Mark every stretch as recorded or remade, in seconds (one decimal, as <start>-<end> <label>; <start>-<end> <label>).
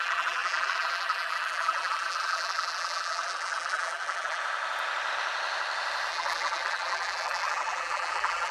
0.0-4.4 remade; 4.4-6.1 recorded; 6.1-8.5 remade